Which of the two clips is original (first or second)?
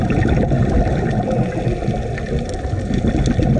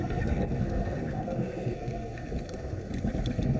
first